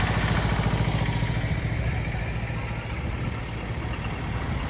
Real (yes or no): yes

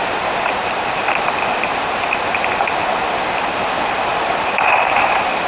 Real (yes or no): yes